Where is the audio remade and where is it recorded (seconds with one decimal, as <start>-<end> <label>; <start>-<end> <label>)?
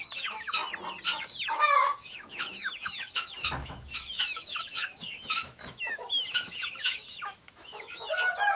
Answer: 0.0-0.6 remade; 0.6-1.2 recorded; 1.2-8.6 remade